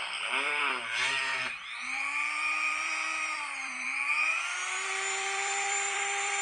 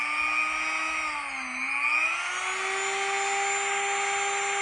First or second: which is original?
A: second